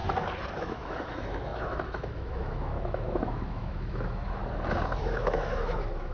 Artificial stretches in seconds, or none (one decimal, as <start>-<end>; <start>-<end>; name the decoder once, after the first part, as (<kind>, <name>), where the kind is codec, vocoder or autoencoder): 0.6-4.4 (autoencoder, DAC-VAE); 5.0-6.1